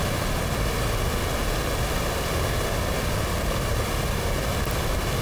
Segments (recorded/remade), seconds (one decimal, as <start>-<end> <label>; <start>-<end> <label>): 0.0-5.2 recorded